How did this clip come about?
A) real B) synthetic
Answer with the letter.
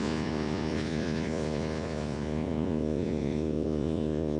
B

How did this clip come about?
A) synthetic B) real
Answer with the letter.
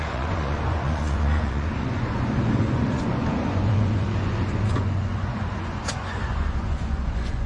A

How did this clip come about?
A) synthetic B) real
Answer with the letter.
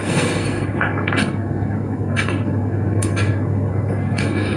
A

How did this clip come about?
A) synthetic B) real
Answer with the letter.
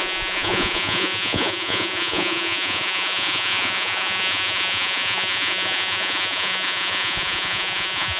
A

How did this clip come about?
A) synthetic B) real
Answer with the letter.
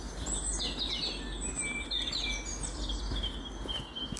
B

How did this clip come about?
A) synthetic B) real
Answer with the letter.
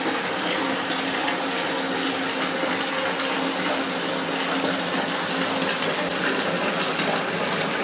B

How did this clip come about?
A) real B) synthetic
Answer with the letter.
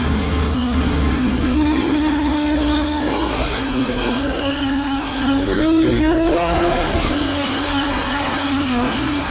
B